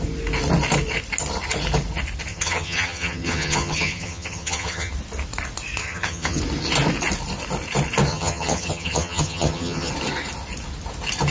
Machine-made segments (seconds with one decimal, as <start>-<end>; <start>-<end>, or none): 2.3-4.9; 5.8-6.4; 8.1-9.9